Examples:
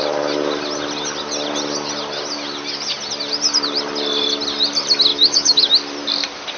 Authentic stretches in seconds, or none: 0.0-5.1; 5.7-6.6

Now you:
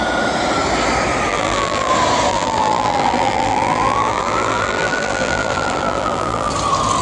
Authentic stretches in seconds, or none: 0.0-1.3; 1.9-2.3; 6.5-7.0

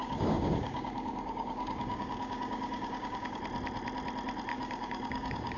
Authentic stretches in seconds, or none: 3.4-4.5

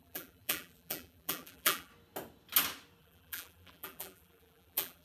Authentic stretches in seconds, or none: 1.9-3.0

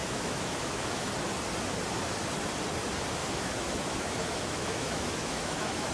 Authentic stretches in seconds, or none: 1.1-3.2